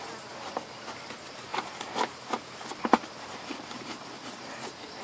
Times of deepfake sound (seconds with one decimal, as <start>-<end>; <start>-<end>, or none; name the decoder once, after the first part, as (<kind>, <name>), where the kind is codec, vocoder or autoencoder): none